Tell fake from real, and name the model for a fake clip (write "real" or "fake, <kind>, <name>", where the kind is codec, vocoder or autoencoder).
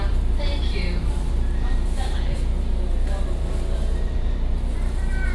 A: fake, vocoder, BigVGAN v2